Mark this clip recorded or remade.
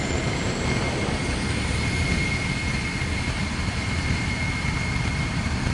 remade